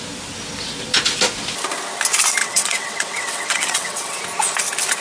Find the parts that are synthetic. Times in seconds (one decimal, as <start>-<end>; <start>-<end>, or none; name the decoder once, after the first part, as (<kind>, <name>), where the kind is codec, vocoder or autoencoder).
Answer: 2.4-4.2 (vocoder, WaveNeXt)